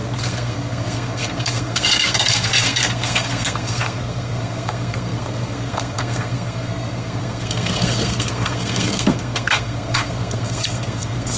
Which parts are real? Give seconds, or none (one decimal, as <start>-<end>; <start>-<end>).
none